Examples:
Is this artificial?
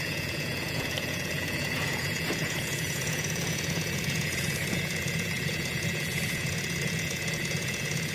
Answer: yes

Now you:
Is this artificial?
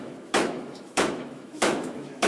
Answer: yes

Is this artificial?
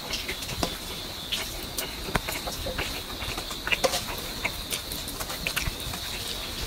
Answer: no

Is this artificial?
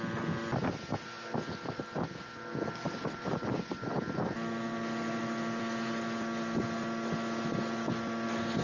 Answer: no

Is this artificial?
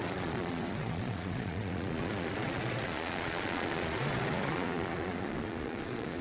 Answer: yes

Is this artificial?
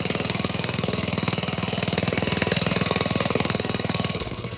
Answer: yes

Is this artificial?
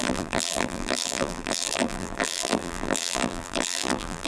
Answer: yes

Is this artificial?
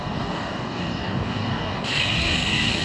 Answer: yes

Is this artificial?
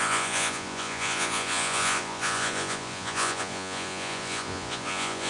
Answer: yes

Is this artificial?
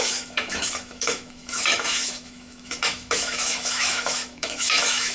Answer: yes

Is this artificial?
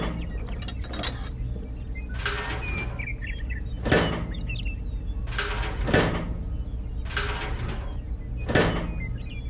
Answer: no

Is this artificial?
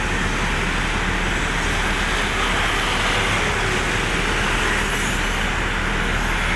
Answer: no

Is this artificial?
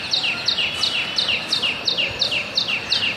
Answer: no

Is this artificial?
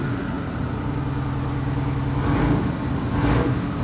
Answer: no